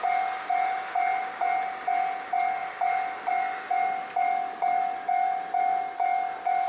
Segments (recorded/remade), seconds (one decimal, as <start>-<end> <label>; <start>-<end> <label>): 0.0-6.7 recorded